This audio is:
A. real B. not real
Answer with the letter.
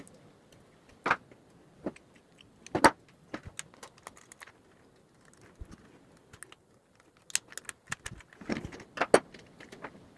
A